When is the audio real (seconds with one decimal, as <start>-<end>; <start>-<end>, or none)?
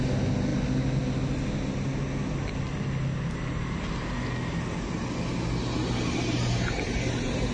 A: 0.0-7.5